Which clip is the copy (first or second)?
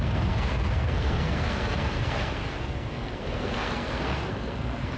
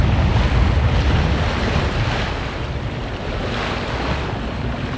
first